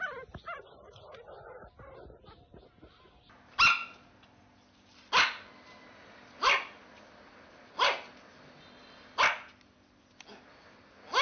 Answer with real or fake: real